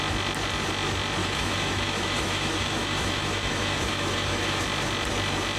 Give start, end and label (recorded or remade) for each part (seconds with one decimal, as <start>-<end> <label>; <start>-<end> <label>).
0.0-1.2 recorded; 1.2-4.6 remade; 4.6-5.6 recorded